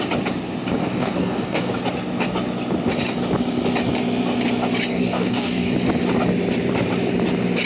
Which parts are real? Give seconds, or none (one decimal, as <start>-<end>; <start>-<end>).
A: 0.0-0.8; 1.7-4.9; 5.7-7.7